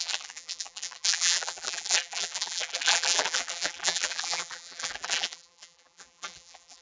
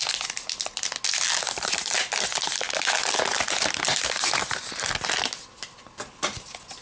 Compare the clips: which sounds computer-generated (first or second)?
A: first